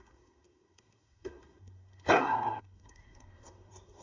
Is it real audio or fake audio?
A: fake